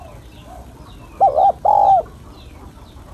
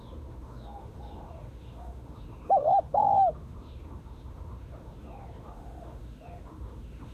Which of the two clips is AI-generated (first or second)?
second